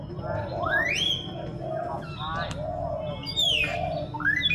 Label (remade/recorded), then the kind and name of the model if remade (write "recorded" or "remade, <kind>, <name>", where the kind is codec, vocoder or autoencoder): recorded